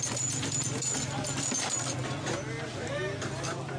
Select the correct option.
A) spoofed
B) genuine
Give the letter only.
B